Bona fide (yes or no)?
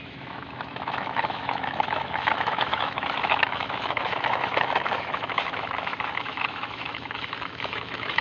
no